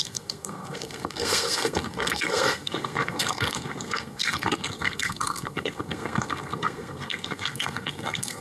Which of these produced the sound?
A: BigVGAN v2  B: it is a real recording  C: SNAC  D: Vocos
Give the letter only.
C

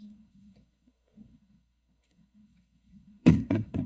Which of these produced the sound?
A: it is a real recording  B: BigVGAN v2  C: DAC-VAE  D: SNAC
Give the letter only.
D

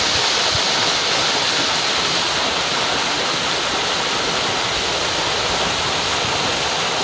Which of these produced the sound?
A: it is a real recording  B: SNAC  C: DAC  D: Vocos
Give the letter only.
A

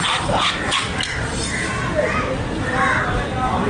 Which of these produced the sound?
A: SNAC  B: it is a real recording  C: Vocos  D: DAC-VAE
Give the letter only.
B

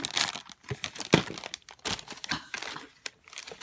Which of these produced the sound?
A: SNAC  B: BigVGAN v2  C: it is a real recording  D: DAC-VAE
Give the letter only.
C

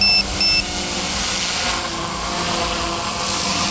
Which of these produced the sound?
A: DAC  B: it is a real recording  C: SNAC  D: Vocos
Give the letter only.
B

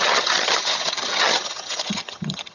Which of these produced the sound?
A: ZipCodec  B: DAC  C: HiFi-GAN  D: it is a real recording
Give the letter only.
C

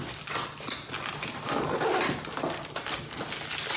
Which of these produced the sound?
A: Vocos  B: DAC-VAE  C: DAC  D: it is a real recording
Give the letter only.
D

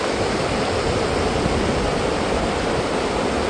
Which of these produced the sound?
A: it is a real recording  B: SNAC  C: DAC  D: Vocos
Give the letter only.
A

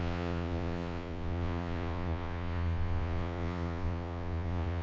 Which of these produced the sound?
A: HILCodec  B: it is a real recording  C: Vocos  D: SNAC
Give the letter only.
C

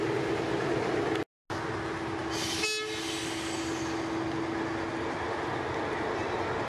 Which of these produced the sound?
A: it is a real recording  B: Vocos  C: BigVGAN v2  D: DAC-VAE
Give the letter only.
A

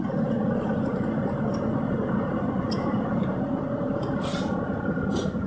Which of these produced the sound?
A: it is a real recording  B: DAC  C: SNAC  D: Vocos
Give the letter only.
A